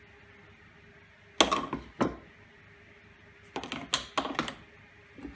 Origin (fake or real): real